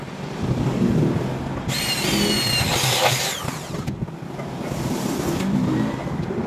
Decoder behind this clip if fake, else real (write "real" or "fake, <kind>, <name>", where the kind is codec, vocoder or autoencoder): real